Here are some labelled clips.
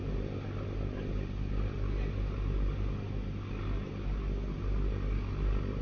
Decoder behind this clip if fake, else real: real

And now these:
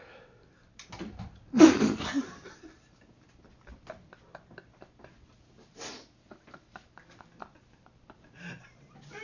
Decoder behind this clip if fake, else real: real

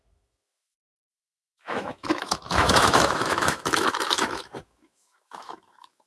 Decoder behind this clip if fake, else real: fake, autoencoder, DAC-VAE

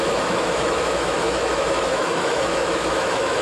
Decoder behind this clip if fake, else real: fake, autoencoder, DAC-VAE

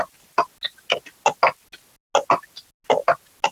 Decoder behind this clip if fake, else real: real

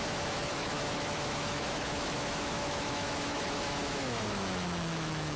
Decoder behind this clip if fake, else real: fake, autoencoder, DAC-VAE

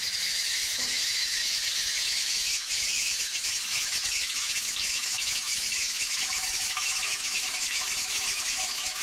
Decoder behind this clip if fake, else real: fake, autoencoder, DAC-VAE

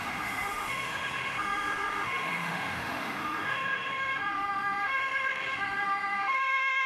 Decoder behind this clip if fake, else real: fake, autoencoder, DAC-VAE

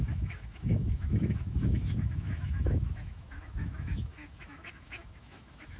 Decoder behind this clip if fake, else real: fake, autoencoder, DAC-VAE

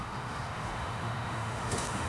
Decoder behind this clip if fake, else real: fake, autoencoder, DAC-VAE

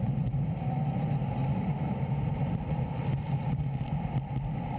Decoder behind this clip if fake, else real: real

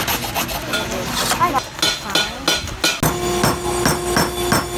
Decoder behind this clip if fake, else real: real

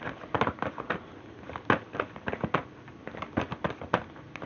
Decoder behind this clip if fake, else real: real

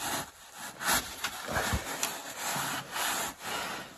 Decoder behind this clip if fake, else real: real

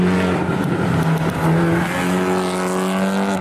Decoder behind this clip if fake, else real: real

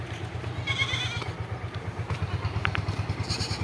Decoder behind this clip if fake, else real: real